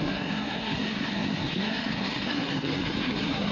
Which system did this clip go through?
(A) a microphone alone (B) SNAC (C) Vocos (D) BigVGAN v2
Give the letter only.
B